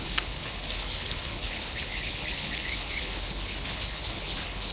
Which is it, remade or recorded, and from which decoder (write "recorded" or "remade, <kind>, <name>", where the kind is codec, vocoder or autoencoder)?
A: remade, codec, HILCodec